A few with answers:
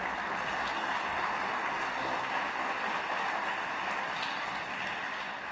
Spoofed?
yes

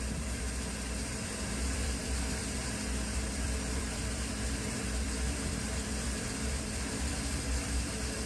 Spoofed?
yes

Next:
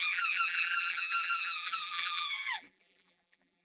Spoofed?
yes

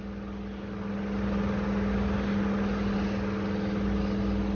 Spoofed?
no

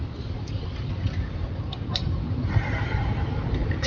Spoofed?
yes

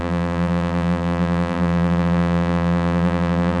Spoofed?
yes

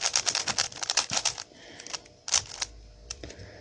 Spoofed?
no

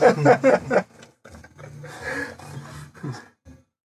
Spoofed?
no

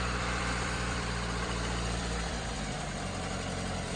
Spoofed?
yes